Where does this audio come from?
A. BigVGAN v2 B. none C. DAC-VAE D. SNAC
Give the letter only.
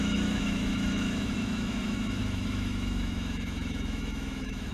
C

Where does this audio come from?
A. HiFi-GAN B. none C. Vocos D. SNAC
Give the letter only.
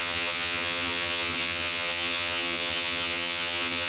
A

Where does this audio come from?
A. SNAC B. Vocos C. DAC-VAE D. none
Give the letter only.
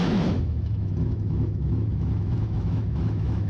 C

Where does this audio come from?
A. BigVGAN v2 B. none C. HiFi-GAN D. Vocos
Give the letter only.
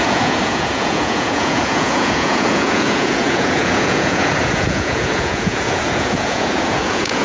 D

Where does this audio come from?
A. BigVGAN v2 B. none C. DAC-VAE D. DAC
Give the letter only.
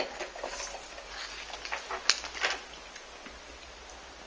B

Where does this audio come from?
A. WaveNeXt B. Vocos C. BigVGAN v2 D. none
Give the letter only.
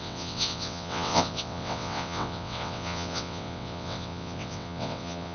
A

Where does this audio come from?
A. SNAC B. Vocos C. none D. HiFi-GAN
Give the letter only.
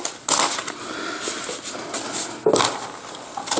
C